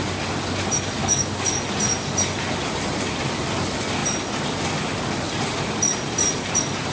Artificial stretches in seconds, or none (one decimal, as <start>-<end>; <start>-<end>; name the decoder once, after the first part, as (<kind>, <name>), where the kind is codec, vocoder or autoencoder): 1.0-1.6 (codec, DAC)